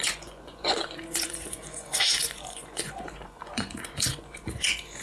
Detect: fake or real fake